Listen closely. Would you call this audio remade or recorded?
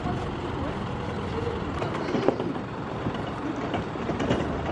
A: recorded